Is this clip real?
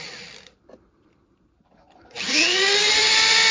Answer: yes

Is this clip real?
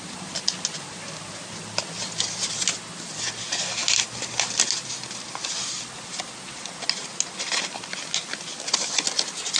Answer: yes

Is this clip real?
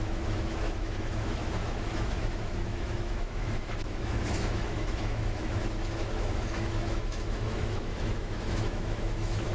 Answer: no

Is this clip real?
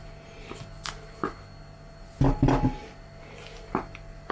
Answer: yes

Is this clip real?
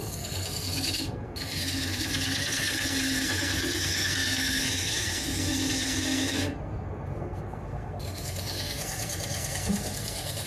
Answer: no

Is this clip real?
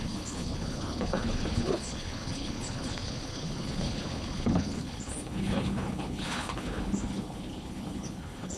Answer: no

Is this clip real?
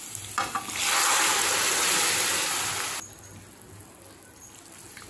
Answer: yes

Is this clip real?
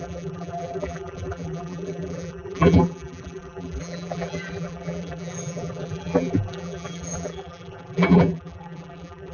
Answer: no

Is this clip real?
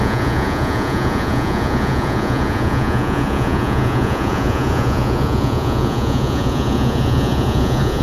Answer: no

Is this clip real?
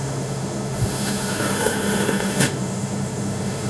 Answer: no